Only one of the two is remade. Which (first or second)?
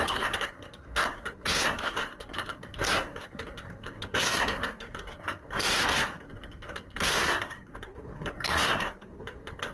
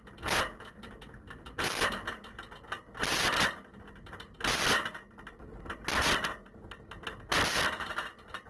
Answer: first